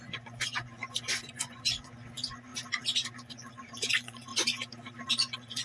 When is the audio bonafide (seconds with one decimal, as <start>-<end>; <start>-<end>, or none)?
2.5-3.1; 4.3-5.1